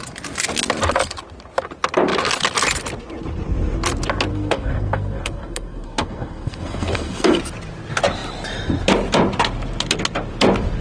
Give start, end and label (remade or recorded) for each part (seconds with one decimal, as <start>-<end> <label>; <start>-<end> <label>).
0.0-4.3 recorded; 4.3-7.4 remade; 7.4-10.8 recorded